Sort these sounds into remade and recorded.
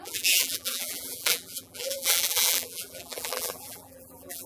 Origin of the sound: remade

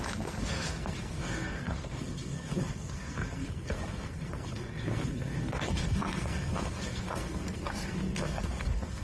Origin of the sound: remade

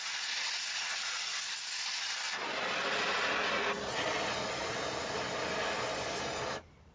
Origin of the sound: recorded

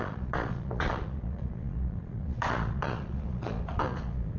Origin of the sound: remade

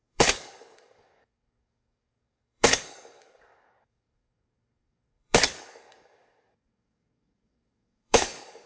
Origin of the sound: remade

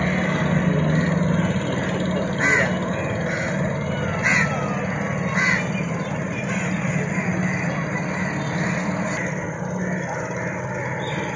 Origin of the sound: recorded